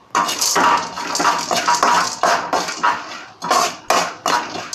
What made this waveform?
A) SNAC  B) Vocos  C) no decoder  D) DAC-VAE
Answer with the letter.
C